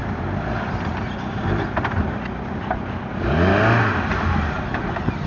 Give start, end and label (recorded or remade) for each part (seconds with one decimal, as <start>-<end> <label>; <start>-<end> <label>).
0.0-3.1 recorded; 3.1-3.5 remade; 3.5-5.3 recorded